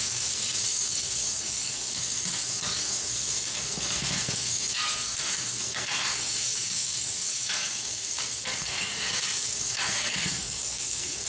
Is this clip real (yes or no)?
no